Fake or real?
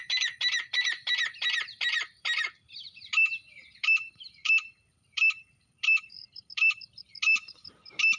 fake